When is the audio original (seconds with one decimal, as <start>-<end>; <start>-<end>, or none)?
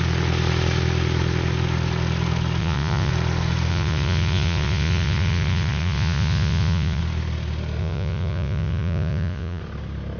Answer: 0.0-2.6; 3.1-3.7; 7.0-7.8; 9.6-10.2